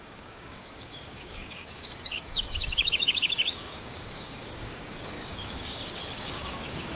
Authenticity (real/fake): fake